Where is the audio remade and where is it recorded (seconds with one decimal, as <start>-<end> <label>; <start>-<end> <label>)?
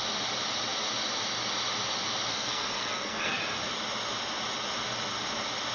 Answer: 0.0-2.3 recorded; 2.3-3.4 remade; 3.4-5.7 recorded